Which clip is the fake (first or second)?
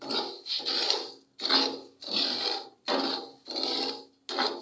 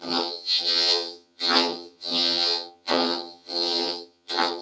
second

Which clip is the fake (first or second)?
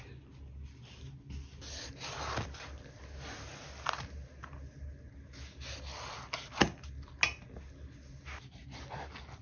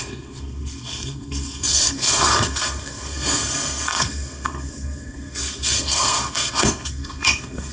second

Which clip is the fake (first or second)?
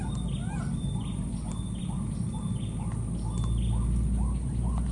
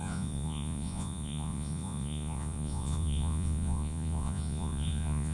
second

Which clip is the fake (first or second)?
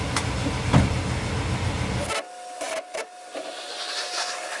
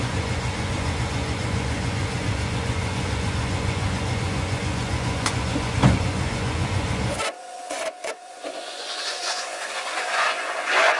second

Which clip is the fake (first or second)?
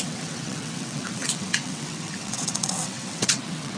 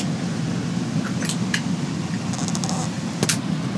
first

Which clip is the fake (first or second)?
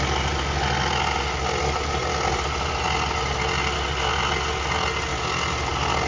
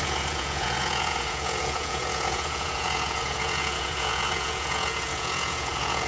second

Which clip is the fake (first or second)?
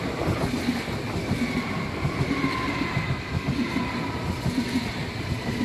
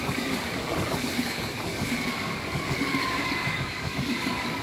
second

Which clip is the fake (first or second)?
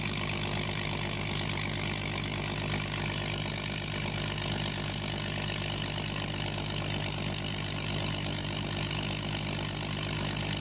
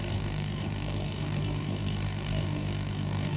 second